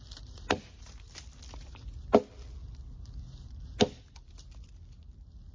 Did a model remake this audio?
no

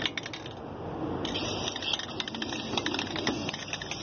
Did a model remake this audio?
no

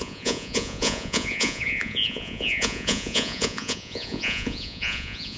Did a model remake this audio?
yes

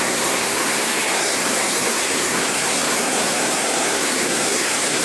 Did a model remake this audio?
yes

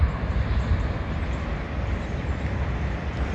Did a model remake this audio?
no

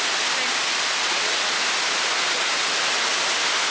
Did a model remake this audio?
no